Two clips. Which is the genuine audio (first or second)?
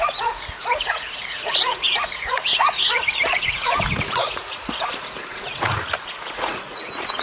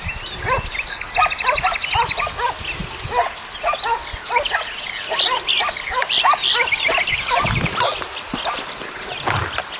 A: second